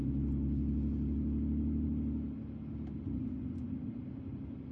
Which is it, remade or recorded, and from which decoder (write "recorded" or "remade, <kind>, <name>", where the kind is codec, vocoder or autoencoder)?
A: recorded